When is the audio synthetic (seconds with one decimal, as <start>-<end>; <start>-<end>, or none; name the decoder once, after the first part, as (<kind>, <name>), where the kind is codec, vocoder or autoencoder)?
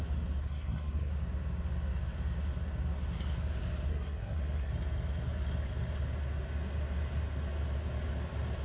0.4-1.1 (codec, SNAC); 3.9-4.7